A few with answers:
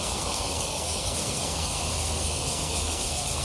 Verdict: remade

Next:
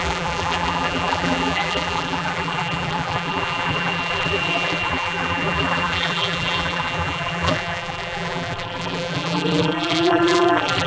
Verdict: remade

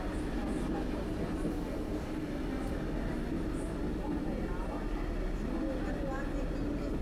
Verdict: recorded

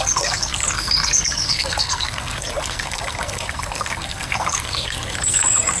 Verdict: remade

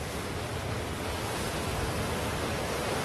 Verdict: recorded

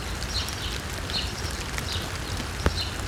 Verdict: recorded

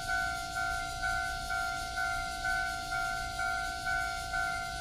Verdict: remade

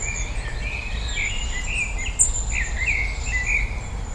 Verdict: recorded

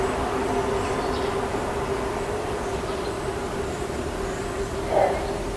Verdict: recorded